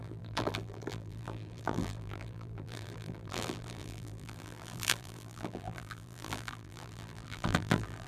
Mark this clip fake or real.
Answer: fake